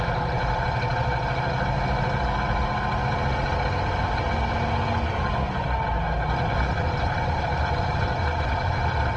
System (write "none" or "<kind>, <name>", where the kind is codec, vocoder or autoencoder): none